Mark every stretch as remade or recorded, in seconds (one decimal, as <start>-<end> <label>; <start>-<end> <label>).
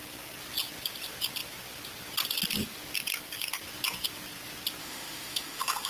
0.0-4.8 recorded; 4.8-5.9 remade